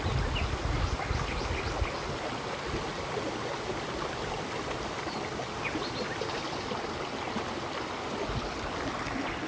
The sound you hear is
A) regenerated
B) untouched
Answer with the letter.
B